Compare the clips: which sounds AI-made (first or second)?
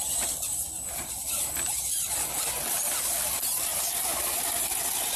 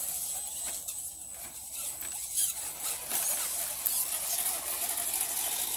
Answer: first